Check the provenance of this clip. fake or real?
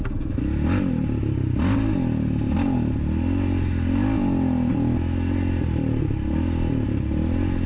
real